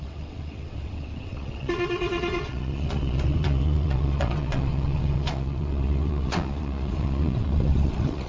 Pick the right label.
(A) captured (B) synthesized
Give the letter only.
B